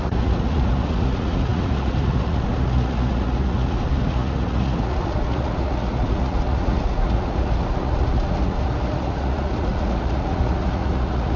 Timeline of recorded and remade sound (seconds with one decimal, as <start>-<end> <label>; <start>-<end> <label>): 0.0-11.4 remade